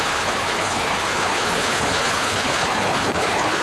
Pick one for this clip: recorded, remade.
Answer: remade